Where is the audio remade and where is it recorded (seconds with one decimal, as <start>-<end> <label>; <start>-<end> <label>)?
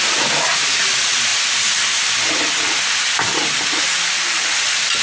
0.0-5.0 recorded